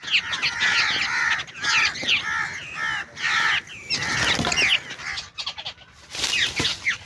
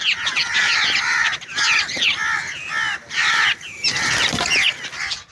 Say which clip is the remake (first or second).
second